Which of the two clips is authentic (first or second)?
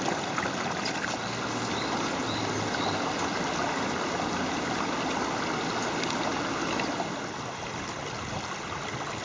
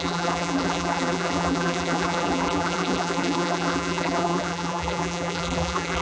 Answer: first